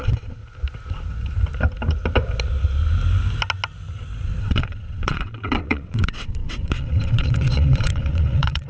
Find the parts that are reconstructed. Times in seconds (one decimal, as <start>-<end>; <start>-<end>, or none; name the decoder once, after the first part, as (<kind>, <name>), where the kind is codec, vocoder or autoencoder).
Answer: 0.0-0.4 (vocoder, WaveNeXt); 4.4-8.7